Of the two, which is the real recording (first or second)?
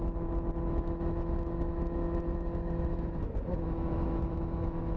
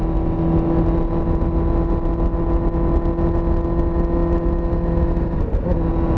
second